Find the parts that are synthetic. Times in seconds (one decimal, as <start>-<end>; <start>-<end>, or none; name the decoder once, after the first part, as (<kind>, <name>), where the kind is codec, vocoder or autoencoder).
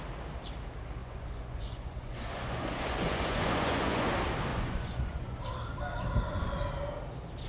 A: 1.0-4.1 (vocoder, Vocos); 4.5-5.4